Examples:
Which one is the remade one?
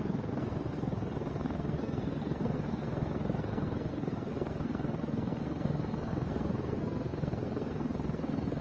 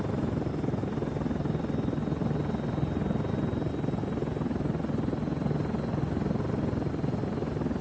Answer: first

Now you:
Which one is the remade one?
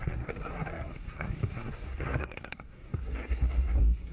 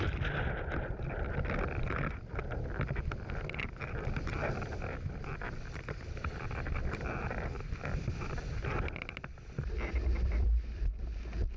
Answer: first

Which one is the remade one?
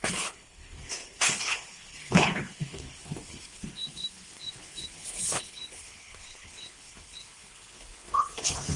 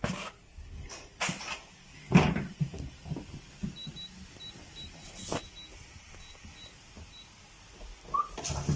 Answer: first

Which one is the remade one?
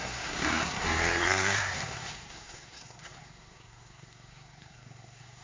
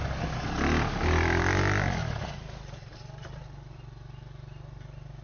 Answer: first